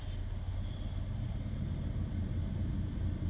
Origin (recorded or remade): recorded